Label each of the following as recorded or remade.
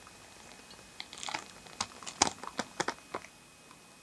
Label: recorded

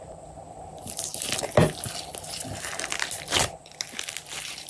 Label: remade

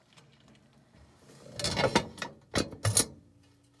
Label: recorded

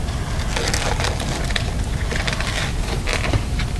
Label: recorded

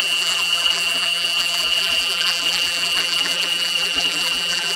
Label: remade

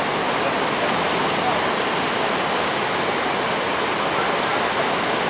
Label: recorded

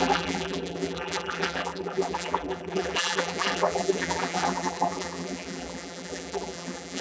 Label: remade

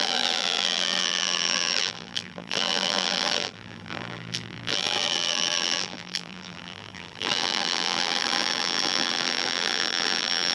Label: remade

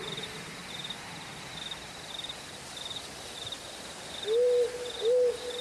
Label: recorded